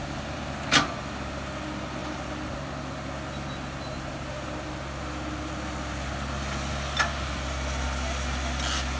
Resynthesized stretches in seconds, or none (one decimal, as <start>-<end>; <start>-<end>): none